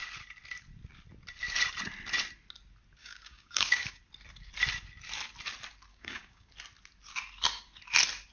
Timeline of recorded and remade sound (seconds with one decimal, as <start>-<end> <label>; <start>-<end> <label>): 0.0-3.0 recorded; 3.0-4.0 remade; 4.0-5.9 recorded; 5.9-6.5 remade; 6.5-8.3 recorded